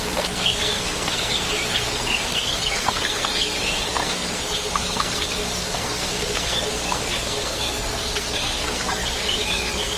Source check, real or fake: fake